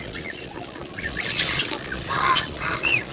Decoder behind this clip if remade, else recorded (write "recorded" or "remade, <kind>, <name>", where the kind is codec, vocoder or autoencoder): remade, vocoder, Vocos